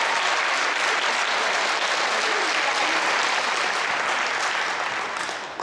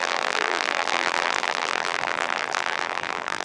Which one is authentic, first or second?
first